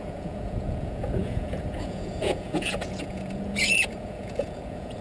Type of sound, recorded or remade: remade